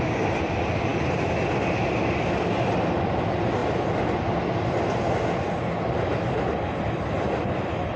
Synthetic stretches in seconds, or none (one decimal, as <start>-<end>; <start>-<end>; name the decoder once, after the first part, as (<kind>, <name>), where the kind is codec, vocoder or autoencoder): none